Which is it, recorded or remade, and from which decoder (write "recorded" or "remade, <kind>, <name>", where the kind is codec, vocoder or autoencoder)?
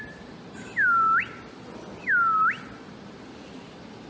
recorded